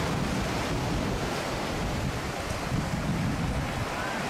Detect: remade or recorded recorded